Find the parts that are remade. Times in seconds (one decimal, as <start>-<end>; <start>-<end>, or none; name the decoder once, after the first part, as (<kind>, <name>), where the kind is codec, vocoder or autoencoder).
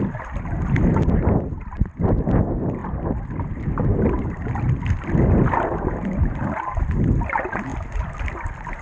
none